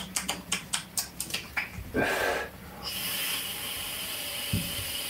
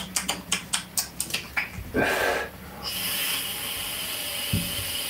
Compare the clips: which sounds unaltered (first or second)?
second